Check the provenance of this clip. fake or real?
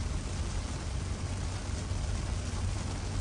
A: real